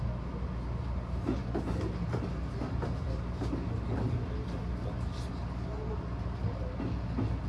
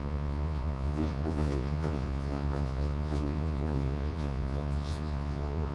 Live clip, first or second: first